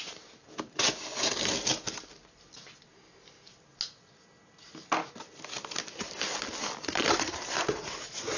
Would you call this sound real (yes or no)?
yes